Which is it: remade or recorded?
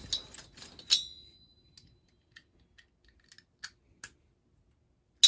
recorded